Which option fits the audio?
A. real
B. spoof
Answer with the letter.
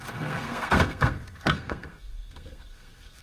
B